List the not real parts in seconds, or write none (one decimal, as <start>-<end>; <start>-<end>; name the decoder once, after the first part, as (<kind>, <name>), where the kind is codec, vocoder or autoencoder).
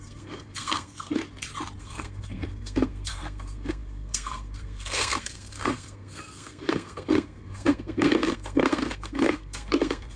0.0-1.2 (codec, SNAC); 1.8-10.2